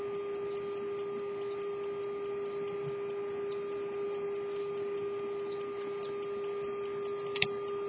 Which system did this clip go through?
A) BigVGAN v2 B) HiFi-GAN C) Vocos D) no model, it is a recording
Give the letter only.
D